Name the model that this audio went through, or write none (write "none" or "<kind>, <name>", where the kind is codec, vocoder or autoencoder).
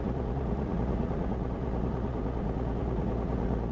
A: vocoder, Vocos